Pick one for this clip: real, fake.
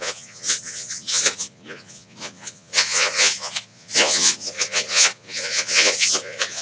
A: fake